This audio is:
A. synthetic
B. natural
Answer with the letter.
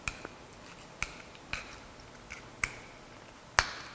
B